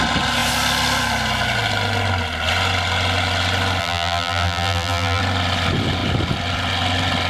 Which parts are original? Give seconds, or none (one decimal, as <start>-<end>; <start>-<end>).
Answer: 0.0-3.8; 5.2-7.3